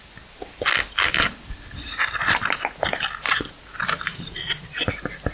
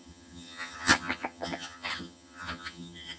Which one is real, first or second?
first